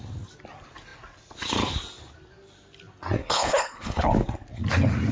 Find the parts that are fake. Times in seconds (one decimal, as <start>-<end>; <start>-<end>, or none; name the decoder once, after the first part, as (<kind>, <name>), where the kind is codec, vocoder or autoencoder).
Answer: 3.2-4.0 (codec, HILCodec)